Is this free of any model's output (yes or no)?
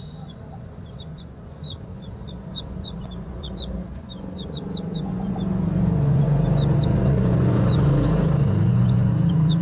no